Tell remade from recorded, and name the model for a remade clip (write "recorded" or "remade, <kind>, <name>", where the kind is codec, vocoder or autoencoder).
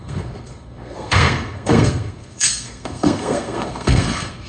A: remade, codec, SNAC